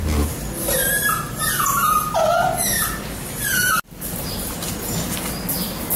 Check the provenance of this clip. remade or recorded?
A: recorded